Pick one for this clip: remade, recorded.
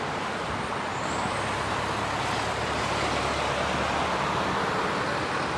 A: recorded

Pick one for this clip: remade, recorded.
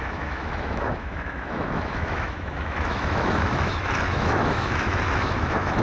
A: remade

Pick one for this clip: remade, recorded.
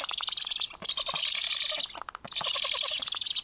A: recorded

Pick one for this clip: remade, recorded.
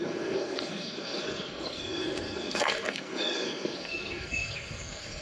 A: remade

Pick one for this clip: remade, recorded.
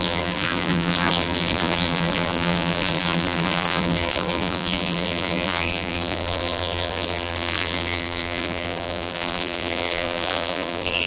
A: remade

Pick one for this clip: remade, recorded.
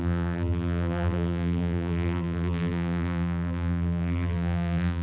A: remade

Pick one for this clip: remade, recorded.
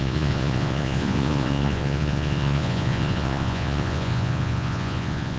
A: remade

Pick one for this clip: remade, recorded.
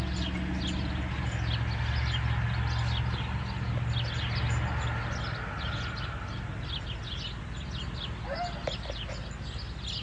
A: recorded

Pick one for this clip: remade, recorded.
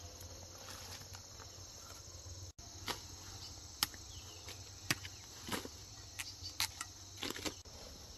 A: recorded